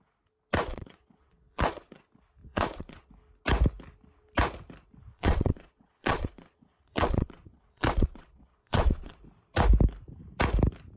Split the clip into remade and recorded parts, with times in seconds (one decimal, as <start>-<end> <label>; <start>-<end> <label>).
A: 0.0-0.7 recorded; 0.7-2.0 remade; 2.0-2.4 recorded; 2.4-3.1 remade; 3.1-5.1 recorded; 5.1-9.2 remade; 9.2-11.0 recorded